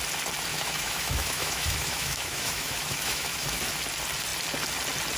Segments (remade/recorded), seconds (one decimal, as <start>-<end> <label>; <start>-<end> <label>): 0.0-0.5 recorded; 0.5-3.6 remade; 3.6-5.2 recorded